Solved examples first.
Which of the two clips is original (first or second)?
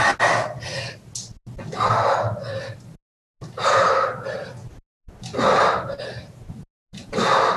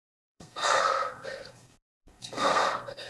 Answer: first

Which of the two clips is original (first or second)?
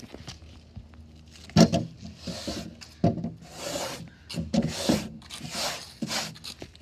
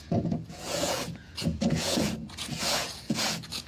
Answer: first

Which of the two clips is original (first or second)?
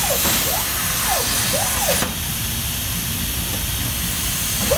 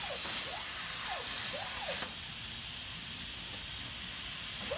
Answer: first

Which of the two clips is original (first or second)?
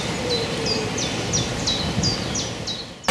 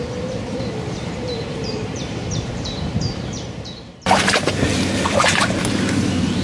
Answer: first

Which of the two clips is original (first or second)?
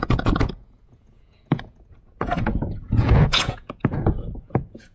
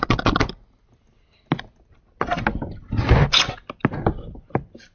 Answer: second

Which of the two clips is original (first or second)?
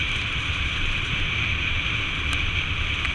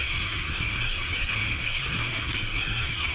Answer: first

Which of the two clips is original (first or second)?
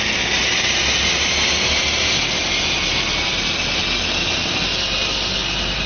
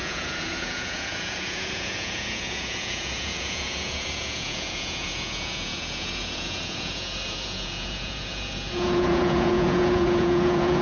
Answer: first